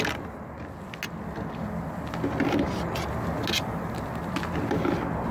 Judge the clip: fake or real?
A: real